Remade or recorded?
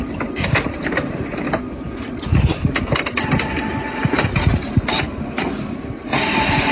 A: recorded